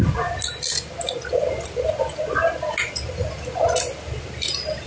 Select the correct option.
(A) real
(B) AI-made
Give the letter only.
A